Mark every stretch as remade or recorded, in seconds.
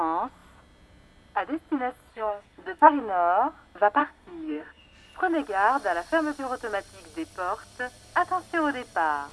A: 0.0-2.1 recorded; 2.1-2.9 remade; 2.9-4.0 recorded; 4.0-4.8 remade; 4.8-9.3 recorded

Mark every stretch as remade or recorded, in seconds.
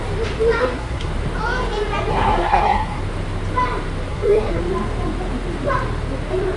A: 0.0-0.6 recorded; 0.6-1.1 remade; 1.1-2.1 recorded; 2.1-3.0 remade; 3.0-4.1 recorded; 4.1-4.6 remade; 4.6-6.6 recorded